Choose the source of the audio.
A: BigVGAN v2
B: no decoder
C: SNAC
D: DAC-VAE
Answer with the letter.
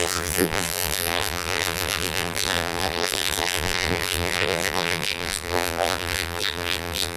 A